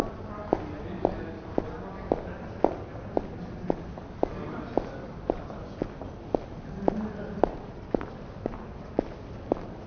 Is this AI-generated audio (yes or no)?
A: no